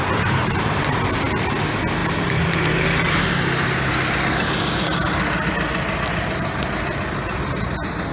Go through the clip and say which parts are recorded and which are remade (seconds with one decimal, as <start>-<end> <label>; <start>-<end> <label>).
0.0-0.4 recorded; 0.4-1.0 remade; 1.0-2.0 recorded; 2.0-3.9 remade; 3.9-8.1 recorded